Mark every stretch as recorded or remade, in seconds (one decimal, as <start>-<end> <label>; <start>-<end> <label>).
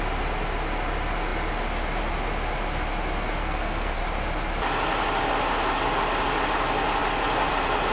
0.0-3.4 recorded; 3.4-4.0 remade; 4.0-7.9 recorded